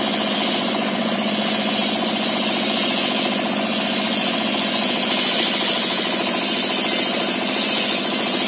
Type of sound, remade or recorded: remade